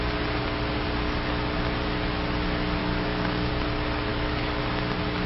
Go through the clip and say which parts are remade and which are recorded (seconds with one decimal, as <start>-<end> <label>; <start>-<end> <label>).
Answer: 0.0-2.8 recorded; 2.8-3.5 remade; 3.5-4.1 recorded; 4.1-4.6 remade; 4.6-5.3 recorded